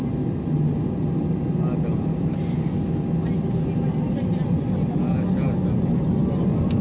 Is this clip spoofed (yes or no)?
no